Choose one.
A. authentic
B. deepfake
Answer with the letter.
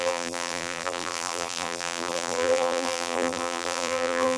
B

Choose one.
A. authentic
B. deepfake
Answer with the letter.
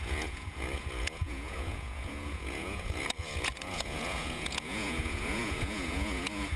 B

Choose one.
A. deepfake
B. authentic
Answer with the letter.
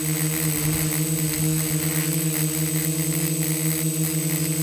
B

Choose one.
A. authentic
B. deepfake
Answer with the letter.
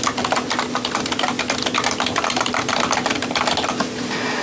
A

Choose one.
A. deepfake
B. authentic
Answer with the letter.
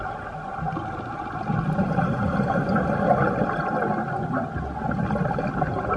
B